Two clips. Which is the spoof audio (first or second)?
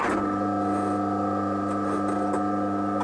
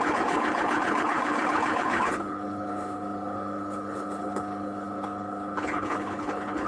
second